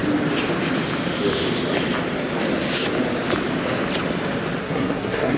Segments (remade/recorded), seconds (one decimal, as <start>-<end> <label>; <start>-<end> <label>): 0.0-4.6 recorded; 4.6-5.4 remade